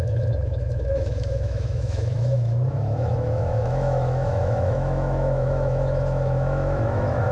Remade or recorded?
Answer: remade